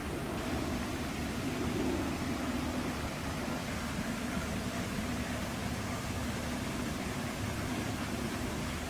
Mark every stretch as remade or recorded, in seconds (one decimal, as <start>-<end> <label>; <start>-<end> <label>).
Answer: 0.0-1.8 remade; 1.8-8.9 recorded